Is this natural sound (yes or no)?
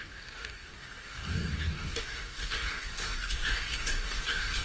no